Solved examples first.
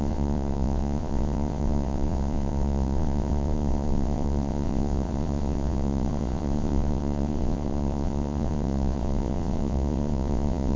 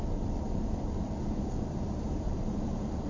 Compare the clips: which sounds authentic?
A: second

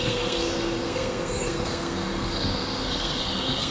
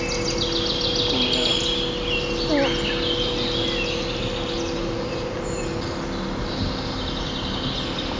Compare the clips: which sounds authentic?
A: second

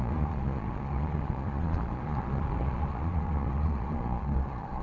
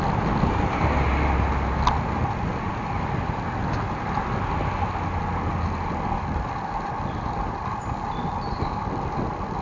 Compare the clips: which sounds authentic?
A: second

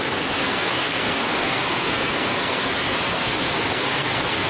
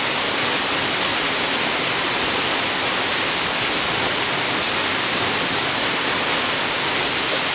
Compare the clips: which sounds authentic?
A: second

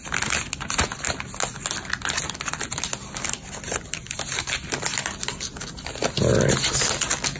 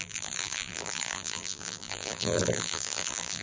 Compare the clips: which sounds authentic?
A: first